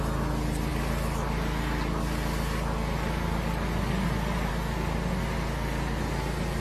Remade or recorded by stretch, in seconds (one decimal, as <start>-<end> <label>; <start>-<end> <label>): 0.0-6.6 recorded